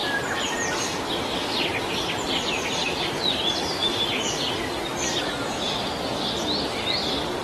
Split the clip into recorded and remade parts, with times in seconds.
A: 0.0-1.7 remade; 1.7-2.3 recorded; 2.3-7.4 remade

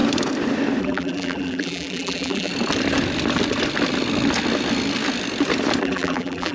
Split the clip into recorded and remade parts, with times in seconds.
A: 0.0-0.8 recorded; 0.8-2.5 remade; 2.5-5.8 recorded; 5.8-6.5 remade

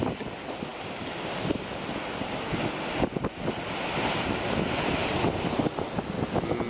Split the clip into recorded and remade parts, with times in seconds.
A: 0.0-6.7 recorded

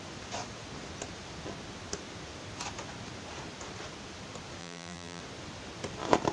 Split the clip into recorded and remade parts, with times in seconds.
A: 0.0-4.6 recorded; 4.6-5.2 remade; 5.2-6.3 recorded

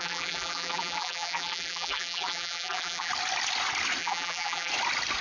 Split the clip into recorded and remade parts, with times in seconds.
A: 0.0-3.1 remade; 3.1-4.0 recorded; 4.0-4.7 remade; 4.7-5.2 recorded

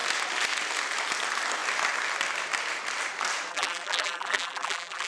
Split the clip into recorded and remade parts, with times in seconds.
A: 0.0-3.5 recorded; 3.5-5.1 remade